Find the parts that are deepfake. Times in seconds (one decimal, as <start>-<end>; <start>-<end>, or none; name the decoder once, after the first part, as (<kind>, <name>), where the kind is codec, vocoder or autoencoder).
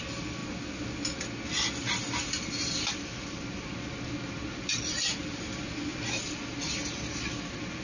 none